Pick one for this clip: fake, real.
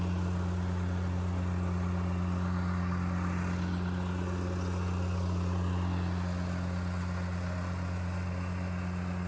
real